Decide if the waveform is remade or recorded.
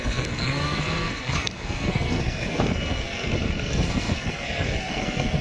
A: remade